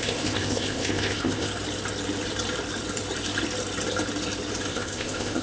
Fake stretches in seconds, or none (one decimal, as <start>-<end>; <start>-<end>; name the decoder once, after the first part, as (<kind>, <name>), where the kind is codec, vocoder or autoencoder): 0.0-1.5 (codec, ZipCodec); 4.7-5.4